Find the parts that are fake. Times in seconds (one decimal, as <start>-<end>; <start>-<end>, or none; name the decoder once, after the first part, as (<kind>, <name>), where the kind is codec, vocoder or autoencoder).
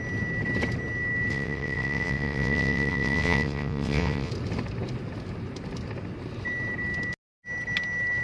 1.3-4.3 (vocoder, WaveNeXt)